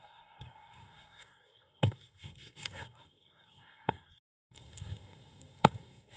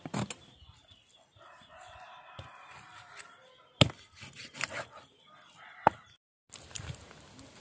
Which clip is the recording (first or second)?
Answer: second